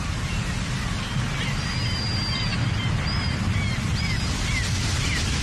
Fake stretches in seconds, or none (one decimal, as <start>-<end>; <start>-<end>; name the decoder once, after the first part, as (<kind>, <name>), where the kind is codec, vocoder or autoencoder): 2.5-3.4 (vocoder, BigVGAN v2)